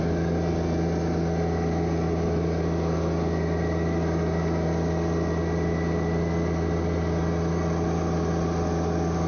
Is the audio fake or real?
real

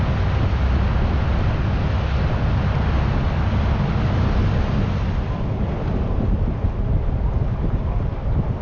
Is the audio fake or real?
real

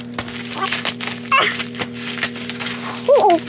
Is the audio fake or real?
real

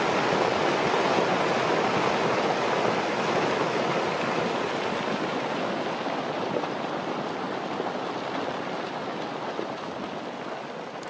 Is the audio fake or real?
real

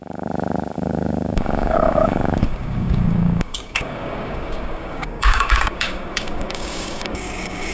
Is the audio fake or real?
fake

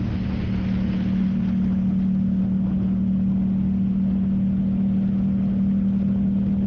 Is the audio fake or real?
real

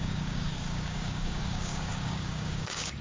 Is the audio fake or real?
fake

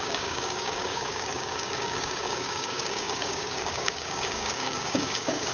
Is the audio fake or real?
fake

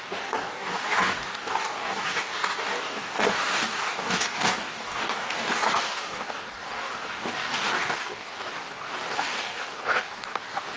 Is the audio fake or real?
fake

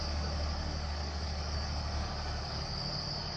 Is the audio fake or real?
fake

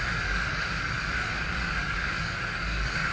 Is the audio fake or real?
fake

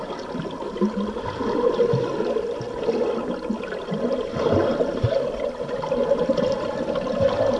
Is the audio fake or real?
real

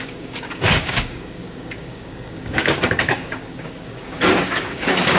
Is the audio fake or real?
fake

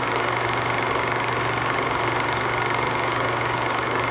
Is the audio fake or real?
fake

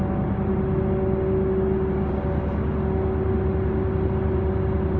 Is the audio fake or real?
real